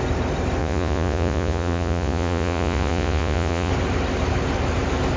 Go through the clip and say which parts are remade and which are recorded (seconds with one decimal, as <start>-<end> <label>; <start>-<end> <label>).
0.0-0.6 recorded; 0.6-3.7 remade; 3.7-5.2 recorded